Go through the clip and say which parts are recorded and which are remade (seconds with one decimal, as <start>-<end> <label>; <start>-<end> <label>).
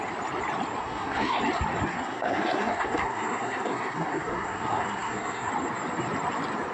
0.0-0.8 recorded; 0.8-1.4 remade; 1.4-1.9 recorded; 1.9-5.5 remade; 5.5-6.7 recorded